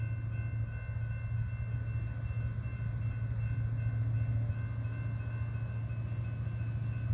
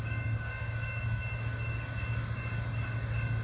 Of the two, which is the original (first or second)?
first